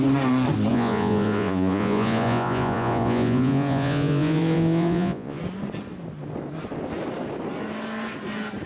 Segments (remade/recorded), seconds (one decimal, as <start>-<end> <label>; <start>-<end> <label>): 0.0-0.7 recorded; 0.7-5.4 remade; 5.4-8.7 recorded